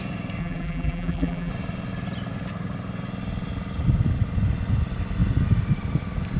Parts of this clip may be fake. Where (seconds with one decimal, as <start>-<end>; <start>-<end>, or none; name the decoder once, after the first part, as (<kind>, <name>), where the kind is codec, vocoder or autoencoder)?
0.4-1.5 (vocoder, BigVGAN v2)